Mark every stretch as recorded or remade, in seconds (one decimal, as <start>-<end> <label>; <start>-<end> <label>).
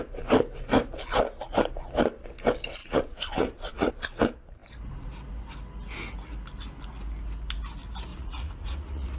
0.0-2.8 recorded; 2.8-3.9 remade; 3.9-8.1 recorded; 8.1-9.2 remade